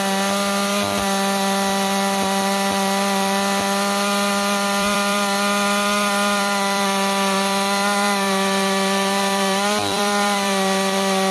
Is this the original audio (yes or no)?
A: no